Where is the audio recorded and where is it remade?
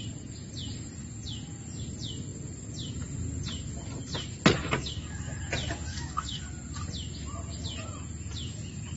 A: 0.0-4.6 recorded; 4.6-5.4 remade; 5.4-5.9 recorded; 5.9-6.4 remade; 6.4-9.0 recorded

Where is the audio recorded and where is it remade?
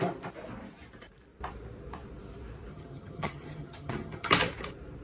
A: 0.0-2.7 recorded; 2.7-4.3 remade; 4.3-5.0 recorded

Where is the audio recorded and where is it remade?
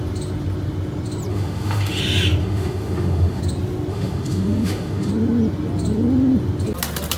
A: 0.0-1.3 recorded; 1.3-2.0 remade; 2.0-2.4 recorded; 2.4-3.4 remade; 3.4-3.9 recorded; 3.9-5.1 remade; 5.1-7.2 recorded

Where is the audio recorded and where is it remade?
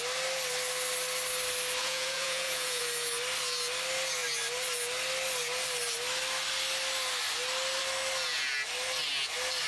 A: 0.0-1.8 recorded; 1.8-2.8 remade; 2.8-9.7 recorded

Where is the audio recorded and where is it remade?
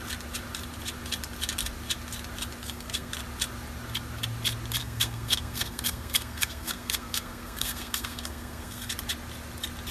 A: 0.0-2.6 recorded; 2.6-3.1 remade; 3.1-4.8 recorded; 4.8-8.9 remade; 8.9-9.9 recorded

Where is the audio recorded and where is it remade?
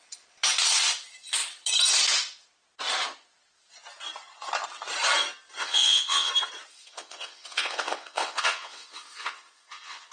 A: 0.0-5.6 recorded; 5.6-6.3 remade; 6.3-6.7 recorded; 6.7-10.1 remade